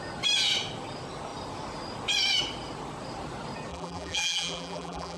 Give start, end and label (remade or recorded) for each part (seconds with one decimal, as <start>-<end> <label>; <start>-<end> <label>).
0.0-3.7 recorded; 3.7-5.2 remade

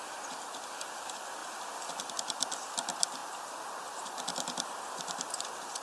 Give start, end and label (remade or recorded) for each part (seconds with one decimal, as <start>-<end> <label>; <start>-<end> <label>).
0.0-5.8 recorded

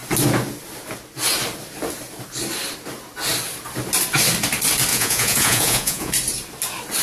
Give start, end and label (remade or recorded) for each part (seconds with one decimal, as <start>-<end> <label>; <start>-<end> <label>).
0.0-4.9 recorded; 4.9-6.1 remade; 6.1-7.0 recorded